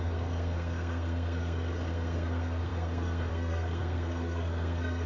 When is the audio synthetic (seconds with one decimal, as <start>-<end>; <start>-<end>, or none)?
0.0-5.1